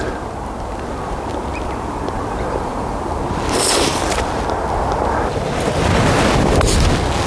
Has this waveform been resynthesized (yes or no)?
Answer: no